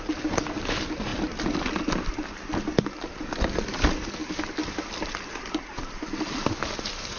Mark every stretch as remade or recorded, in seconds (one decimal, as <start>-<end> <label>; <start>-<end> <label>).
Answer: 0.0-7.2 recorded